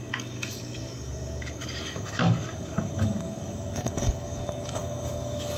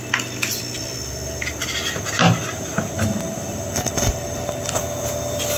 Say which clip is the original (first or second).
second